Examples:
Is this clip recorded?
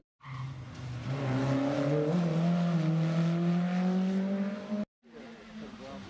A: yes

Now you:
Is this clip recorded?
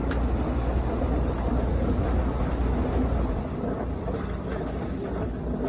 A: yes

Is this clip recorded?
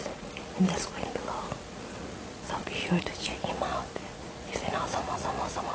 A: no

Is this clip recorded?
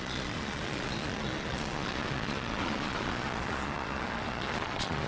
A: no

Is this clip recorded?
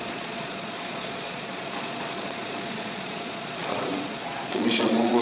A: no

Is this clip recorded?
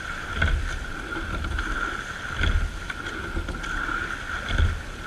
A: yes